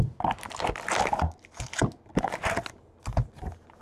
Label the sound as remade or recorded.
recorded